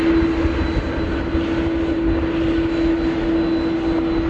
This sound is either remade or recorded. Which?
recorded